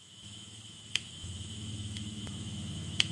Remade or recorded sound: remade